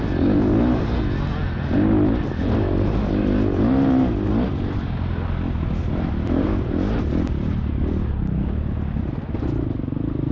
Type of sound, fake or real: real